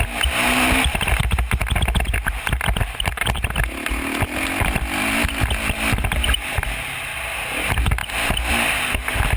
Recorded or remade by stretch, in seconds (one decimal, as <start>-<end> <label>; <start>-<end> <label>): 0.0-9.4 recorded